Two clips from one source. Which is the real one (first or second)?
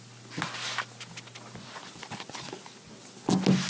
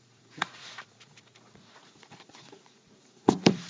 first